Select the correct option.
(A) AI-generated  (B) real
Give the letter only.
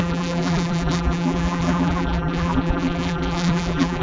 A